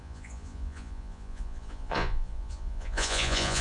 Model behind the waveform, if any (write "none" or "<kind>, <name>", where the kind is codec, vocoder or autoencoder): vocoder, Vocos